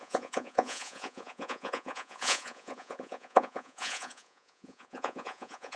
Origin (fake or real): fake